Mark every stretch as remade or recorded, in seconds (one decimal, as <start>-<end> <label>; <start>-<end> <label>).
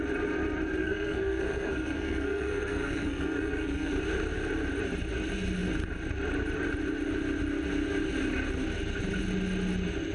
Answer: 0.0-0.8 recorded; 0.8-3.9 remade; 3.9-10.1 recorded